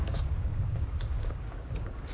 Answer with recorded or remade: remade